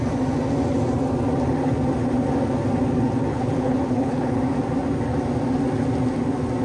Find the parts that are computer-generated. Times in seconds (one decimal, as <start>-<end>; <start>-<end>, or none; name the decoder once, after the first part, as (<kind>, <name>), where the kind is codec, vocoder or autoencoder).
3.3-4.4 (codec, HILCodec)